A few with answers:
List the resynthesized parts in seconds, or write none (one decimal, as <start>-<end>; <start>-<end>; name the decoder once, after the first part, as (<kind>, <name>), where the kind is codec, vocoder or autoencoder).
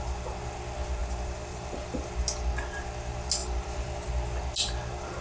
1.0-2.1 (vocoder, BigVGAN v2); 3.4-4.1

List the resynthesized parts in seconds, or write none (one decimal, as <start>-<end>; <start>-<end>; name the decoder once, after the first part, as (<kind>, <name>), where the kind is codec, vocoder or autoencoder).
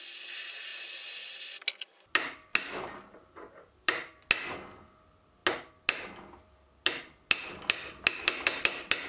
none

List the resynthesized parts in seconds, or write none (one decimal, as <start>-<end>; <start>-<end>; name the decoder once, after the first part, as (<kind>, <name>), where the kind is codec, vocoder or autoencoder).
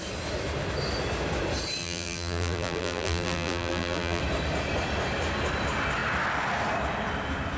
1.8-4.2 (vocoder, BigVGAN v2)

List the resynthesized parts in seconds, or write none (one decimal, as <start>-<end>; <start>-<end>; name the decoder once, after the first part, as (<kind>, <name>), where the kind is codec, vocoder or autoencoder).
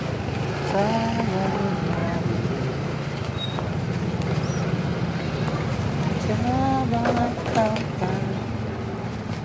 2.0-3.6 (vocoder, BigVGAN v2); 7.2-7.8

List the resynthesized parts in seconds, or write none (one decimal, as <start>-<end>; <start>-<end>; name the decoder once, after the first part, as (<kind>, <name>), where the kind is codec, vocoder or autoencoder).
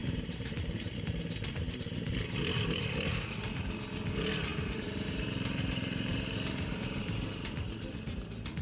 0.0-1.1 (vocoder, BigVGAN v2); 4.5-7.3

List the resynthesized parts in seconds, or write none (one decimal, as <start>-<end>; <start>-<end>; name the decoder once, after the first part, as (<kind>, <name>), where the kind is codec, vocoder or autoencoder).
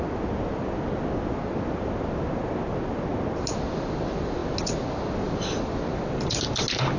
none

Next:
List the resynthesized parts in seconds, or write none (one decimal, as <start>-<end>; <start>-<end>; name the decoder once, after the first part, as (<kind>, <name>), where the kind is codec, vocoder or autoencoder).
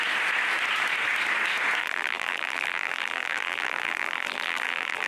1.8-5.1 (vocoder, BigVGAN v2)